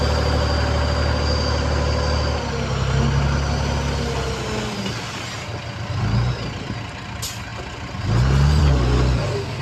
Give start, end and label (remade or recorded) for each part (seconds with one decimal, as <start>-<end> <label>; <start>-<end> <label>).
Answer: 0.0-9.6 recorded